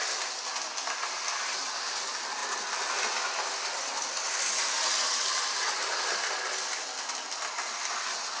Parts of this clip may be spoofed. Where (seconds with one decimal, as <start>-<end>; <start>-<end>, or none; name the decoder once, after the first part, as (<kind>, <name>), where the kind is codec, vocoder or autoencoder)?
none